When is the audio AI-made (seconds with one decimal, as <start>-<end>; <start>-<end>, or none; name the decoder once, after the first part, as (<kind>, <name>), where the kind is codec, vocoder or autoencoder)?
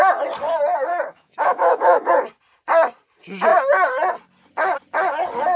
0.9-2.1 (autoencoder, DAC-VAE)